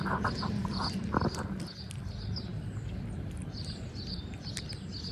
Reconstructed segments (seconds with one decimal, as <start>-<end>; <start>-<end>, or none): 2.5-4.6